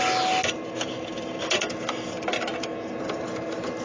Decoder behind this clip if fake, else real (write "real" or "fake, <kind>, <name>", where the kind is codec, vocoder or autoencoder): real